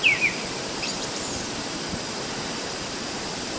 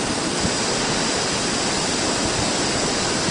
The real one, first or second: second